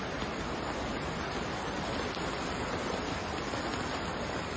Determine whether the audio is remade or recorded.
remade